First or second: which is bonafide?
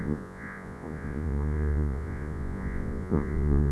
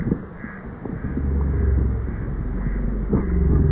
second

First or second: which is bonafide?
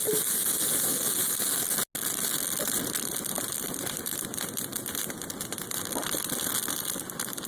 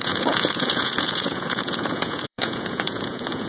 first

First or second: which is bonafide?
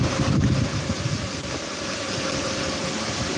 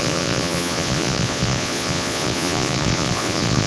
first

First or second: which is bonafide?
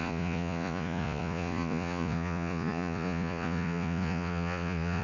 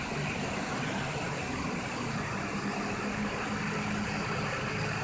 second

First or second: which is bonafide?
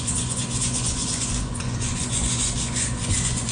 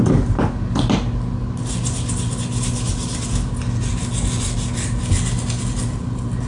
second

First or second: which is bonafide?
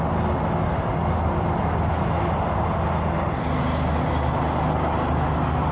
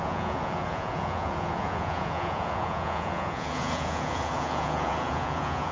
first